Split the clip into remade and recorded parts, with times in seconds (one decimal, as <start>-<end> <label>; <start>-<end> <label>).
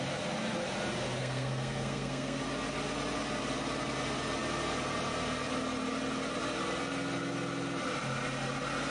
0.0-1.2 recorded; 1.2-2.4 remade; 2.4-8.9 recorded